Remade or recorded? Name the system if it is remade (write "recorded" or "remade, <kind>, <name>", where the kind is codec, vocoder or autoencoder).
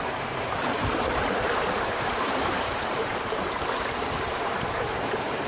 remade, vocoder, BigVGAN v2